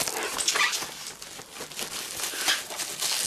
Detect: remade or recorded recorded